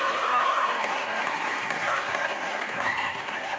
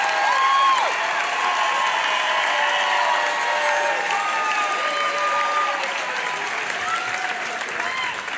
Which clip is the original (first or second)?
second